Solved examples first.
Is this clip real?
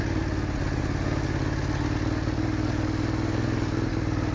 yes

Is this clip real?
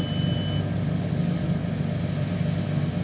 yes